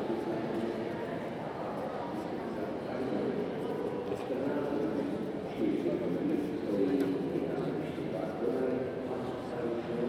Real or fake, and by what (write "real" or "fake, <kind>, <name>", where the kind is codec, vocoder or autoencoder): real